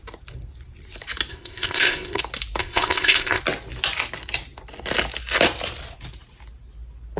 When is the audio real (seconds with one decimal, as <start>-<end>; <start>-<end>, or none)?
0.0-1.3; 2.2-2.6; 3.4-7.2